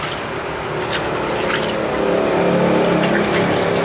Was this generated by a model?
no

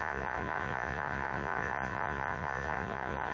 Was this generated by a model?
yes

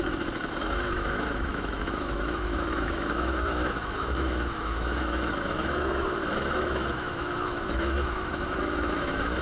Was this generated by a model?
yes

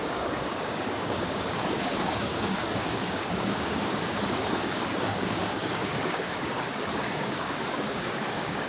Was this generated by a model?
yes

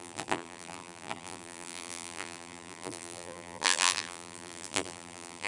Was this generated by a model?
yes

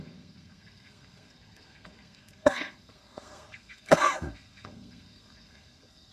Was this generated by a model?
yes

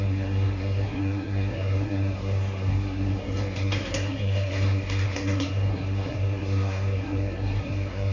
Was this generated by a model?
yes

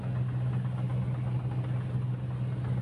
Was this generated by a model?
no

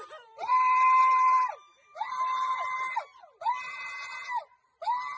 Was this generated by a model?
no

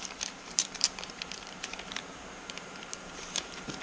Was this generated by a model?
yes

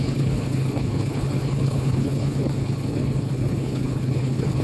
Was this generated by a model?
yes